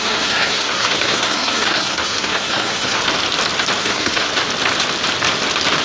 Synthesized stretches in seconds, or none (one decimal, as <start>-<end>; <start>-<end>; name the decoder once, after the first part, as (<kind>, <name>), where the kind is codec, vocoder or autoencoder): 0.0-3.0 (codec, SNAC); 3.8-4.3